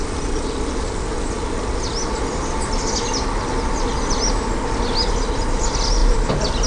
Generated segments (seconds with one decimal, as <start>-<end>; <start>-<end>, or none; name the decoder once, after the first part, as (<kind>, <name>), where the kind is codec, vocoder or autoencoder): none